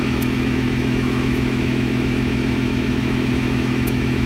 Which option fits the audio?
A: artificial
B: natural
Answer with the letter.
A